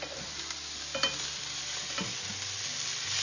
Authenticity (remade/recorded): recorded